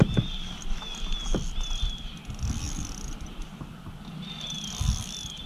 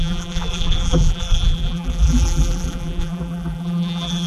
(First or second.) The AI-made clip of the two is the second